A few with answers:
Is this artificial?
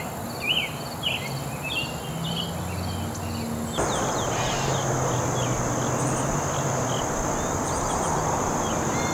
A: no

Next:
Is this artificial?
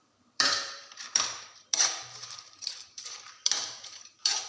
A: yes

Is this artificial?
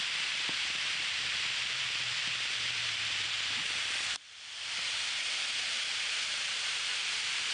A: yes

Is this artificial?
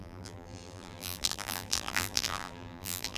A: yes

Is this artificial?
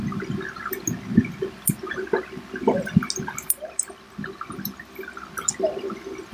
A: no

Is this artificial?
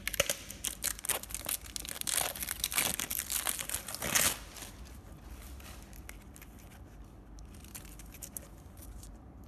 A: no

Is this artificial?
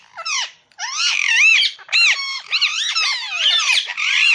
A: yes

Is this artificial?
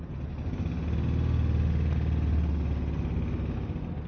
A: no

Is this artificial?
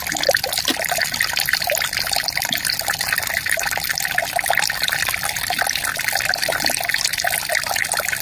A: no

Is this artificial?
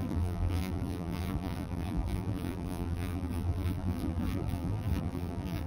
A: yes